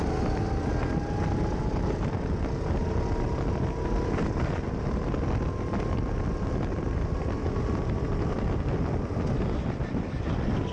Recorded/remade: recorded